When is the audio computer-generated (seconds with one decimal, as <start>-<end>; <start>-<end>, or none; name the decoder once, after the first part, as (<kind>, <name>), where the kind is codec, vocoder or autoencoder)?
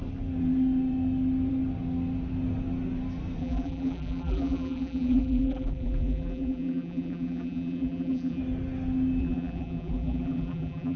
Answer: 3.4-8.4 (vocoder, BigVGAN v2); 9.2-11.0